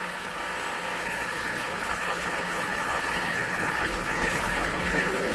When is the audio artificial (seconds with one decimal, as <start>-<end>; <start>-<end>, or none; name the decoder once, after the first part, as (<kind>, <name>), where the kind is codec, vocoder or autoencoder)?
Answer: 0.0-0.4 (codec, HILCodec); 1.0-5.3